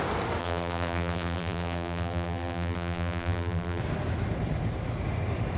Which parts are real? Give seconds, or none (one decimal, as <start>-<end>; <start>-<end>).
0.0-0.4; 3.8-5.6